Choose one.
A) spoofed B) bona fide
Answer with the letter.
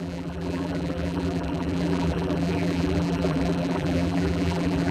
A